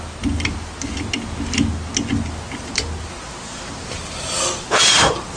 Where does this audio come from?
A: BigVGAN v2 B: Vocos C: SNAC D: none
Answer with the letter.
D